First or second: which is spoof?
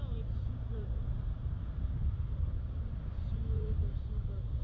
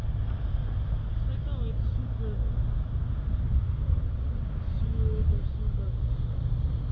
first